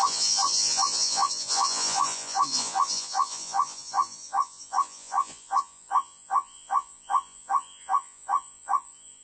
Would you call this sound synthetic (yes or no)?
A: yes